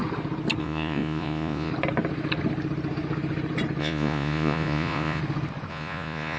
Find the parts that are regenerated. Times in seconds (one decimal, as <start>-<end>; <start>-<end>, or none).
0.6-1.7; 3.8-5.2; 5.7-6.4